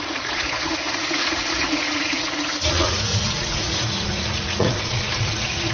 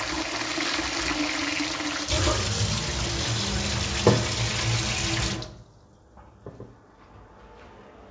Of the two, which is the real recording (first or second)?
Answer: second